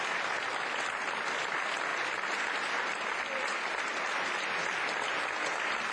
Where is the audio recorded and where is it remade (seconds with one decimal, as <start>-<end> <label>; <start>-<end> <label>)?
0.0-5.9 recorded